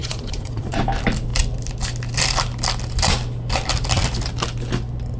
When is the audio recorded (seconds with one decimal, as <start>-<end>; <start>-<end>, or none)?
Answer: 0.8-5.2